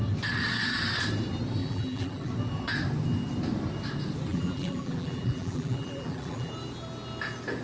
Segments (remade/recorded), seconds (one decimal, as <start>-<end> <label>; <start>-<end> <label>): 0.0-1.6 recorded; 1.6-2.3 remade; 2.3-4.3 recorded; 4.3-6.5 remade; 6.5-7.6 recorded